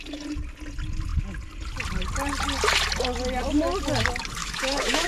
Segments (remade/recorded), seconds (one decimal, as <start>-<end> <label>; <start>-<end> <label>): 0.0-4.4 recorded; 4.4-5.1 remade